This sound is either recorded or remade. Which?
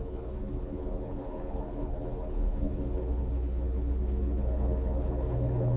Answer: remade